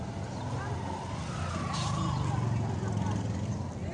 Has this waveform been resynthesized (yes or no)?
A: no